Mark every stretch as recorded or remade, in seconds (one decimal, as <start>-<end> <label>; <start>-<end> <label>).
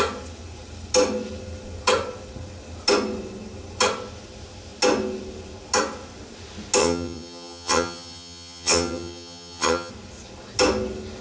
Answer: 0.0-6.8 recorded; 6.8-9.9 remade; 9.9-11.2 recorded